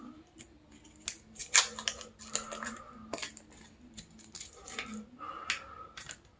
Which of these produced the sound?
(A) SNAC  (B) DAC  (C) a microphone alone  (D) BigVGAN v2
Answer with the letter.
C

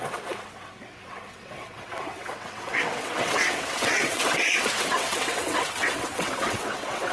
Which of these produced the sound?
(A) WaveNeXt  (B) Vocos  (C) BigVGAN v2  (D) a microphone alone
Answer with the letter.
A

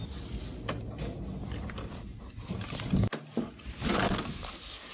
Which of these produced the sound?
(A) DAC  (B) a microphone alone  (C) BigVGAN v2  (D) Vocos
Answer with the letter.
B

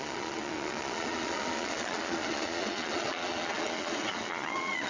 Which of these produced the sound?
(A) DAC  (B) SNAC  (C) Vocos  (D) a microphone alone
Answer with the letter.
C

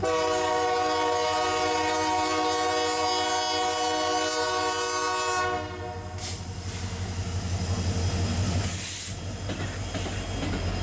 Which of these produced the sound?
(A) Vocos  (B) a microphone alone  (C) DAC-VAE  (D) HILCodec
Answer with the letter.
B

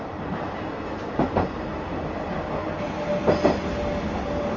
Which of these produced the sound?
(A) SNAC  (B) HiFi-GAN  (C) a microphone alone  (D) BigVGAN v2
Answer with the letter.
C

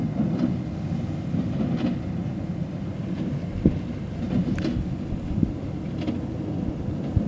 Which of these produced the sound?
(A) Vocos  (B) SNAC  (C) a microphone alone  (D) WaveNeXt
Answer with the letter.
C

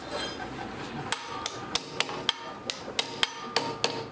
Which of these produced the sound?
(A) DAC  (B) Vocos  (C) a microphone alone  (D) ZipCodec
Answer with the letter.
C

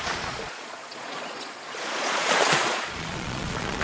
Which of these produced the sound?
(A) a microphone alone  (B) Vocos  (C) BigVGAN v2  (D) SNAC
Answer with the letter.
B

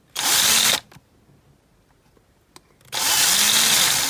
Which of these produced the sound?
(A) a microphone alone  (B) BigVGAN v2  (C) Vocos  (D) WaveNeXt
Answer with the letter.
A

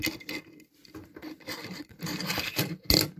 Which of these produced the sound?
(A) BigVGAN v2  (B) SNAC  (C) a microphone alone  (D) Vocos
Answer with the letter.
C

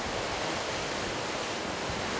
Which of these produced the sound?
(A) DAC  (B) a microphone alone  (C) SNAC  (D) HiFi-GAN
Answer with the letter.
B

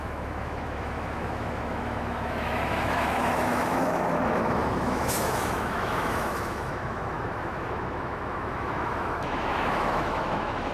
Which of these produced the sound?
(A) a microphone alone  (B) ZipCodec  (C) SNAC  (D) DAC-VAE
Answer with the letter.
D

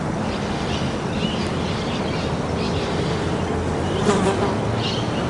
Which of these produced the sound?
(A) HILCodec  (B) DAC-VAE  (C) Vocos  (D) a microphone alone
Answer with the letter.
D